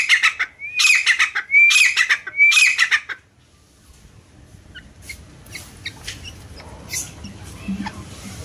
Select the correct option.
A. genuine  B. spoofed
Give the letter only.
A